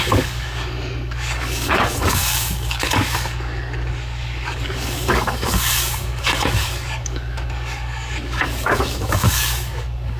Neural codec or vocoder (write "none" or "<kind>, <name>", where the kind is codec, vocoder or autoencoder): codec, DAC